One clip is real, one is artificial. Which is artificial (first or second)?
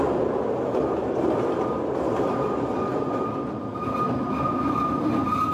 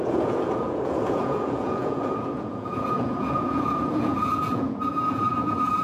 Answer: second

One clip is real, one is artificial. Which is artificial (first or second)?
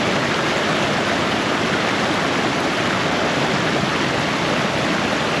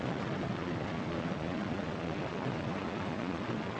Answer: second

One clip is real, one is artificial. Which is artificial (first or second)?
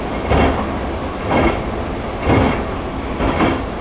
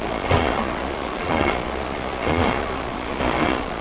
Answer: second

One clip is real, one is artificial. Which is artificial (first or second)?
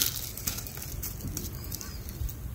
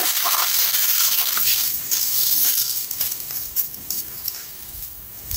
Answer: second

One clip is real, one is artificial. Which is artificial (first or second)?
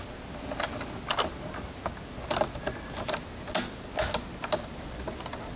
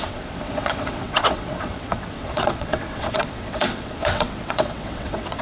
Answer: second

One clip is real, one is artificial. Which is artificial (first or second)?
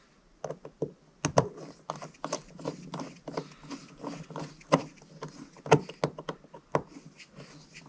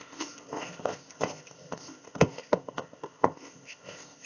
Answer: second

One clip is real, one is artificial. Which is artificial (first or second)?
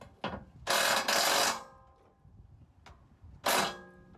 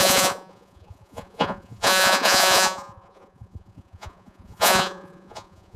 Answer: second